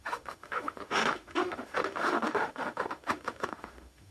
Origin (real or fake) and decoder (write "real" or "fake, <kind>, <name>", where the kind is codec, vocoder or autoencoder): fake, autoencoder, DAC-VAE